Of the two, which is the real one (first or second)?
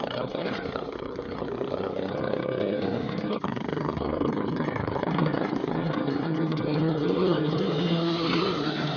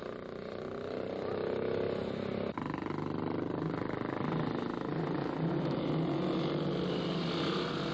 second